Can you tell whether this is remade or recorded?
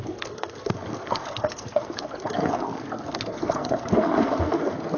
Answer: remade